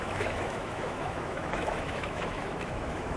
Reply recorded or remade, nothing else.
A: remade